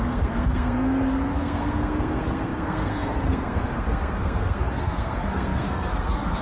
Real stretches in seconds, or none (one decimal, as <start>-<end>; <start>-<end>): none